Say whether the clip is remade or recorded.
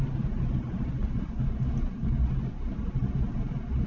recorded